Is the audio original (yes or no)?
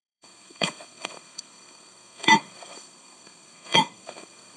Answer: no